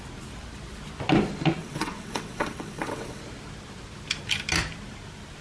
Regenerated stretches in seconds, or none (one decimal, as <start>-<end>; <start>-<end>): 1.6-3.2